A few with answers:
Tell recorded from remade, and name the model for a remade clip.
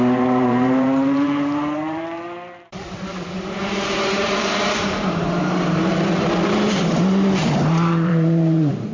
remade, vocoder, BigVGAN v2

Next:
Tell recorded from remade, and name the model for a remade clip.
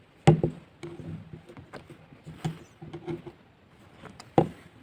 recorded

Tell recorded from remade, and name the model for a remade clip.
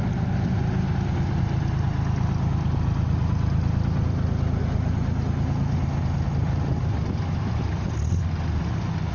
recorded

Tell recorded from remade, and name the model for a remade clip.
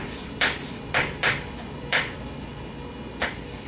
remade, vocoder, BigVGAN v2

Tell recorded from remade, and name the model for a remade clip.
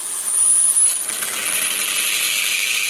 remade, vocoder, BigVGAN v2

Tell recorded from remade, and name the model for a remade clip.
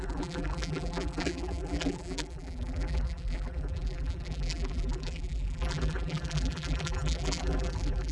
remade, vocoder, BigVGAN v2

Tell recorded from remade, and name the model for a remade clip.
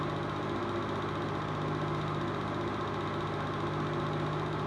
recorded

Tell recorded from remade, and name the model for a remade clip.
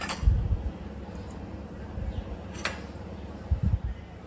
recorded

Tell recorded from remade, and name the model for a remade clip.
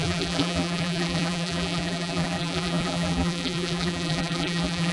remade, vocoder, BigVGAN v2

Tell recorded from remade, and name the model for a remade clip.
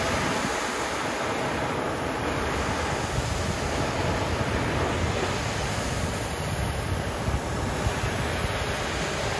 recorded